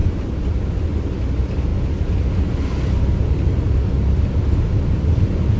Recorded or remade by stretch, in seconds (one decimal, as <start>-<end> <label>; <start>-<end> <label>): 0.0-5.6 recorded